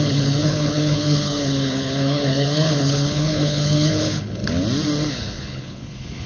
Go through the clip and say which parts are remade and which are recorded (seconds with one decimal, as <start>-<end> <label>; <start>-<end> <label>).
0.0-4.4 remade; 4.4-5.1 recorded; 5.1-6.3 remade